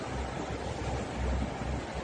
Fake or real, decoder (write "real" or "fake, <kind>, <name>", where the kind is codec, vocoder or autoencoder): real